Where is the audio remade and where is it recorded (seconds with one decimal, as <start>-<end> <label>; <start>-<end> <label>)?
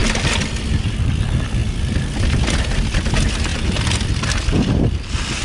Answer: 0.0-5.4 recorded